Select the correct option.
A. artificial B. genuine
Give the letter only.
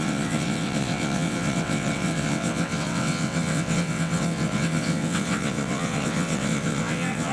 A